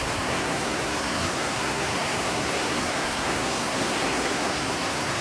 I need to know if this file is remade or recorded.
remade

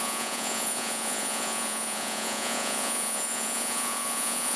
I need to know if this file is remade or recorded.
remade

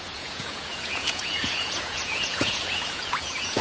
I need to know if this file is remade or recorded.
remade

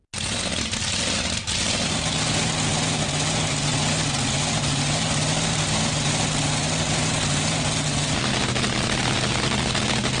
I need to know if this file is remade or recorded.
recorded